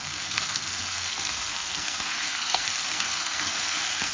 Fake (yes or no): yes